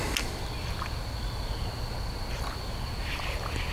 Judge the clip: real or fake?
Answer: real